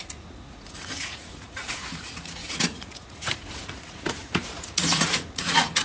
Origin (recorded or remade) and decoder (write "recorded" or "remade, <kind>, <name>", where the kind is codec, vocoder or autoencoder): remade, vocoder, Vocos